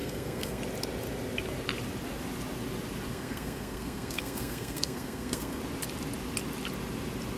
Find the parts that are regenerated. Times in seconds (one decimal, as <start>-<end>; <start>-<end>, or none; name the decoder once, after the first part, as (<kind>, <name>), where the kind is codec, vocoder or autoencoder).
0.0-0.6 (codec, SNAC); 3.1-5.6